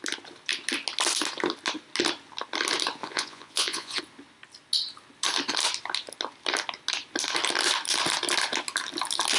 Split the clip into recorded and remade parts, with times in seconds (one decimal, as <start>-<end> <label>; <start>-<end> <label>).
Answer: 0.0-3.0 recorded; 3.0-4.0 remade; 4.0-9.4 recorded